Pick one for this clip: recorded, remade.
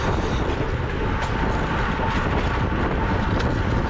recorded